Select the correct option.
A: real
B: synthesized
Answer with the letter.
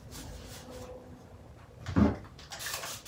A